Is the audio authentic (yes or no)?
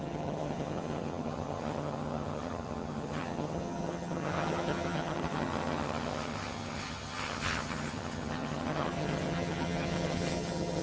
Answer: no